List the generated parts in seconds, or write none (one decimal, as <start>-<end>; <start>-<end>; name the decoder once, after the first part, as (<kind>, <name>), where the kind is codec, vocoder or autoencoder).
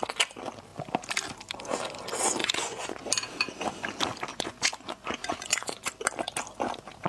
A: 2.4-3.1 (vocoder, Vocos); 4.3-5.9